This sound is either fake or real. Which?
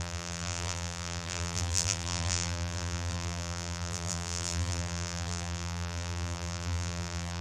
fake